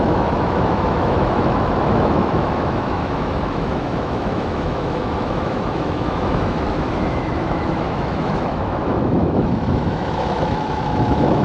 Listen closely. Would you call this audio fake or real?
fake